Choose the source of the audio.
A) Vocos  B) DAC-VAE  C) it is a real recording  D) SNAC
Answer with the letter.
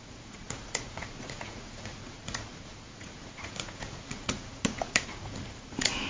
A